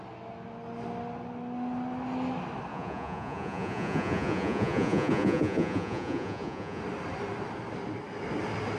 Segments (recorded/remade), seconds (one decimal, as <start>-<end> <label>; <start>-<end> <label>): 0.0-2.7 recorded; 2.7-6.8 remade; 6.8-8.8 recorded